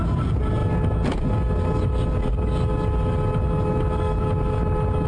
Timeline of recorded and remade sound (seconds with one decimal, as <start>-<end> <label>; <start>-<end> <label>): 0.0-5.1 recorded